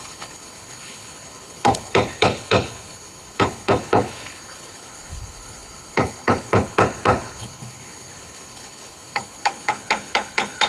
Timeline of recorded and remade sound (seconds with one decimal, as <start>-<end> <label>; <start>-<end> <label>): 0.0-10.7 remade